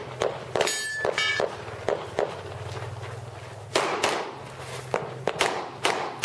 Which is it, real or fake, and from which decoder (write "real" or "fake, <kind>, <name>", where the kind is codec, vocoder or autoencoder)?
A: real